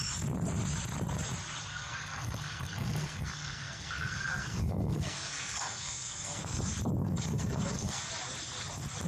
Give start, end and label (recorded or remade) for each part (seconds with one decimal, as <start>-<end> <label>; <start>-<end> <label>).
0.0-1.7 recorded; 1.7-6.6 remade; 6.6-7.0 recorded; 7.0-8.1 remade; 8.1-9.1 recorded